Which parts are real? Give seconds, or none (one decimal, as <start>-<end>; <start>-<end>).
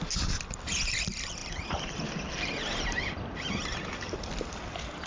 0.0-5.1